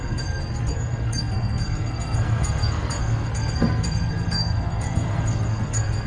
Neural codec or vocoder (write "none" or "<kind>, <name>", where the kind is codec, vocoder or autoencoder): codec, SNAC